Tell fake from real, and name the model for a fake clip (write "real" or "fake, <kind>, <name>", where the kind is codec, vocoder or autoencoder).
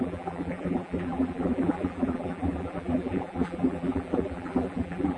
fake, vocoder, BigVGAN v2